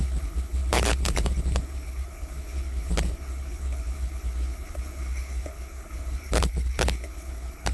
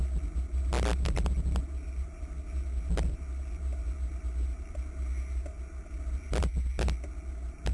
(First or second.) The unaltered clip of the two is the second